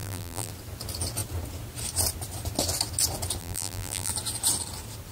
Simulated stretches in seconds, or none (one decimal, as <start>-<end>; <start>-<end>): 0.0-0.5; 3.4-4.1